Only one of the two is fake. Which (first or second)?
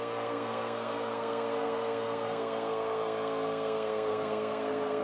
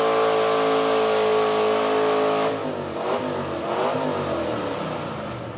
first